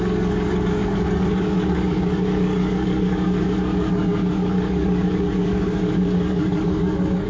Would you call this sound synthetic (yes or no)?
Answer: yes